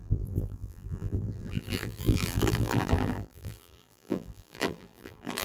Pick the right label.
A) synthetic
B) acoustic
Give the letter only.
A